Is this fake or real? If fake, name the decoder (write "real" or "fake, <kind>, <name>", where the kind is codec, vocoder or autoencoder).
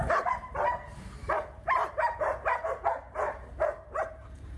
real